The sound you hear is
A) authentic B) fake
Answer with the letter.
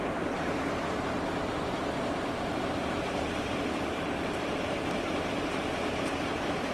B